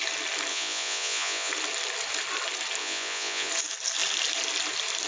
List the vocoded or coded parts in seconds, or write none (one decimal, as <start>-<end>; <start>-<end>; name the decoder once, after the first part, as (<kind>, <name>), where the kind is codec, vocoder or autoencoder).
0.5-1.5 (vocoder, Vocos); 2.8-3.5